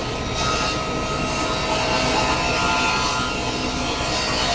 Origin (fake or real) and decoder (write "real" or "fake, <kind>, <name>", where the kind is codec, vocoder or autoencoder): real